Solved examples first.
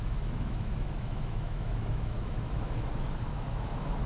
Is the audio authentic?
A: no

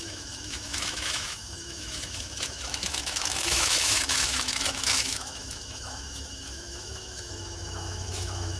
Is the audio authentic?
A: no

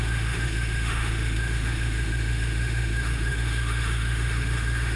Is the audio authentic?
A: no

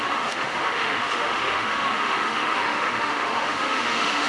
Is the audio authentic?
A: no